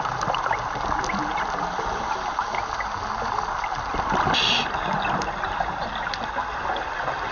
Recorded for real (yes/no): yes